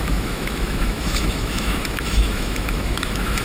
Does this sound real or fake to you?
fake